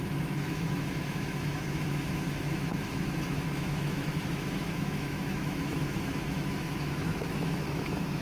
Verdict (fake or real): fake